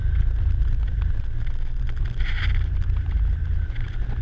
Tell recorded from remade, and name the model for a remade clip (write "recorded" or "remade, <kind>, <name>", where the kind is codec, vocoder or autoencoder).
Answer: recorded